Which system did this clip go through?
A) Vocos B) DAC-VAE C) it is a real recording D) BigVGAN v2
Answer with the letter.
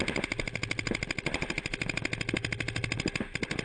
C